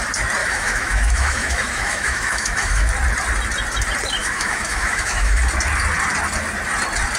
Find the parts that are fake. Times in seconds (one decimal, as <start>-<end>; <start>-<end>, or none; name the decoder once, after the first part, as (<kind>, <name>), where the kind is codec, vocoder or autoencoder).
0.4-2.9 (autoencoder, DAC-VAE); 4.2-5.4